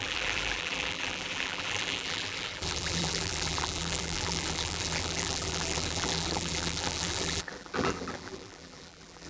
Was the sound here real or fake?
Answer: fake